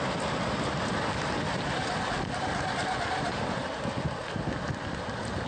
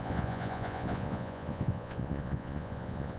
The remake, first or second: second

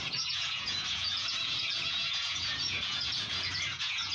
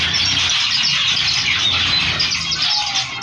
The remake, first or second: first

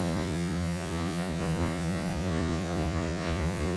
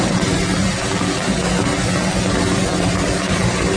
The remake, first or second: first